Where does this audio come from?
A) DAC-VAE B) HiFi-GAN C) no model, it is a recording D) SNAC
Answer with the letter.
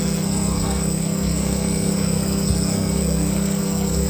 D